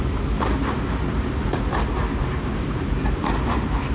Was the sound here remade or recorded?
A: remade